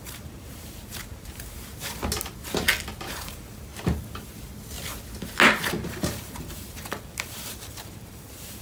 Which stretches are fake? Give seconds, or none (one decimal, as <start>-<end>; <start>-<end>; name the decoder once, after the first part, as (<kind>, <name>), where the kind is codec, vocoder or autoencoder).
0.0-1.7 (vocoder, BigVGAN v2); 3.1-3.7; 5.7-8.6